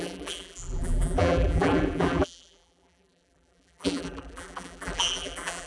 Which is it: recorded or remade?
remade